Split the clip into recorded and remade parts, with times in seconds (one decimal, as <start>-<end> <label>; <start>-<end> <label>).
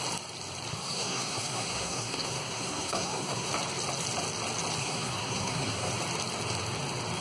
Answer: 0.0-0.7 recorded; 0.7-3.5 remade; 3.5-4.8 recorded; 4.8-5.9 remade; 5.9-7.2 recorded